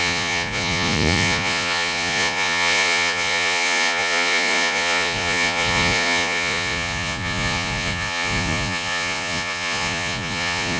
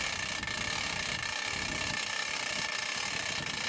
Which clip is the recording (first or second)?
second